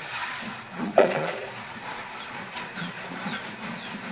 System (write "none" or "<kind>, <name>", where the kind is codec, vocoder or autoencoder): vocoder, Vocos